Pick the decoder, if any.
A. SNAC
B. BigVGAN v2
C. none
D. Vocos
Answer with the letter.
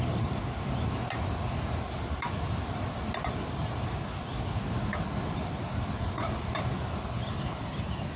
C